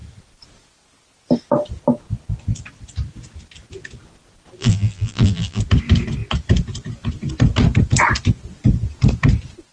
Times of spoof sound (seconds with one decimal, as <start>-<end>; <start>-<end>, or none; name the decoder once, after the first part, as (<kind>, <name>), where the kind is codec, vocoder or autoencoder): 4.6-5.6 (vocoder, BigVGAN v2)